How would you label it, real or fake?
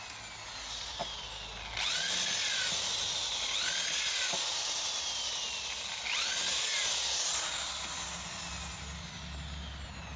real